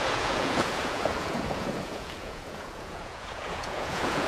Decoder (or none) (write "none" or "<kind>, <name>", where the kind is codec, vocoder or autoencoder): vocoder, Vocos